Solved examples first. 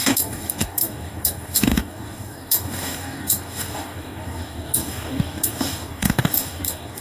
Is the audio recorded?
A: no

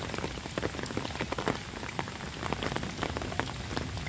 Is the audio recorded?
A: yes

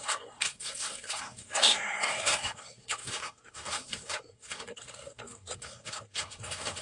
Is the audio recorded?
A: no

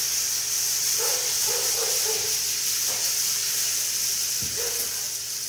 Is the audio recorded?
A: yes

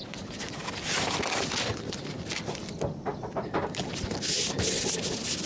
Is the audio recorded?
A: yes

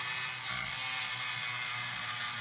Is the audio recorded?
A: yes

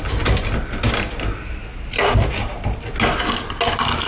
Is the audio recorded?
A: yes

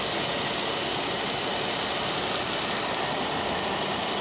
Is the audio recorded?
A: yes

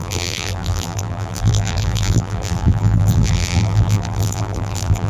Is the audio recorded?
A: no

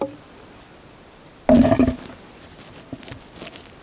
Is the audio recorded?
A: yes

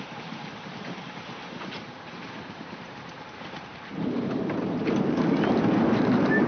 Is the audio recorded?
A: no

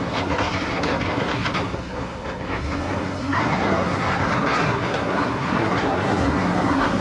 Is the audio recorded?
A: no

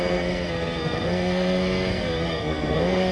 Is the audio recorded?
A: no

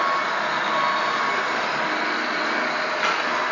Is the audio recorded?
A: yes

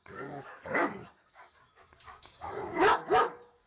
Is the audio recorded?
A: no